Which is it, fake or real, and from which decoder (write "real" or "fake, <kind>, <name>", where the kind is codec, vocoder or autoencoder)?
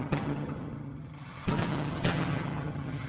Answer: fake, vocoder, HiFi-GAN